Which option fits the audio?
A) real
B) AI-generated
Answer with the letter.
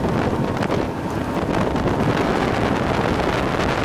A